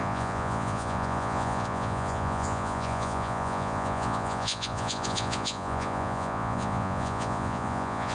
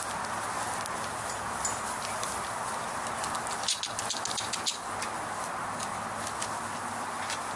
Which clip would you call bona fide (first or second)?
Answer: second